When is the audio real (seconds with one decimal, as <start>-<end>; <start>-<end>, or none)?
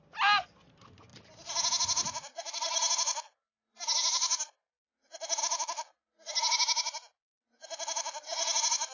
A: 0.0-8.9